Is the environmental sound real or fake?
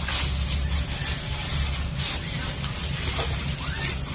real